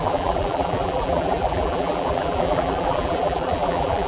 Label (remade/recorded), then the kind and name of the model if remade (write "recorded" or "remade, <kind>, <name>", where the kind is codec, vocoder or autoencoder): remade, vocoder, BigVGAN v2